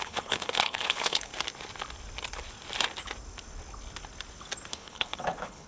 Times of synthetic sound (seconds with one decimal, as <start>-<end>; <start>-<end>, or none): 0.0-1.3; 4.7-5.7